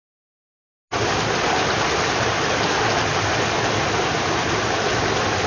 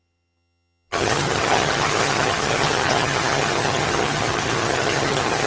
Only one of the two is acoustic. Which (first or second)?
first